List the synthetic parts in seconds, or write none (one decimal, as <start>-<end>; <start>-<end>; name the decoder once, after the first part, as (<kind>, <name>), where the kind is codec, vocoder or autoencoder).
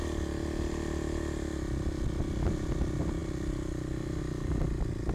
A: none